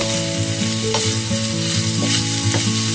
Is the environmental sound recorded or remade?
recorded